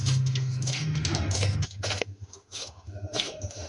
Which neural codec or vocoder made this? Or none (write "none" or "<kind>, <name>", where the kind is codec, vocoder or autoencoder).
autoencoder, DAC-VAE